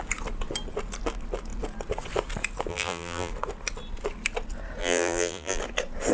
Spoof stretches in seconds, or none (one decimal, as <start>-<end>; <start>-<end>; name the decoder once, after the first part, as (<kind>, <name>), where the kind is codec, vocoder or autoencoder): 2.7-3.3 (vocoder, BigVGAN v2); 4.8-5.6